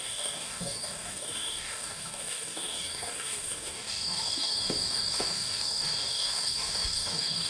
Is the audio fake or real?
fake